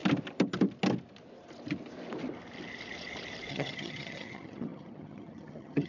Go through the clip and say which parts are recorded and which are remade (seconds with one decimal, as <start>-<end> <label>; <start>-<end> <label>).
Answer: 0.0-3.5 recorded; 3.5-5.9 remade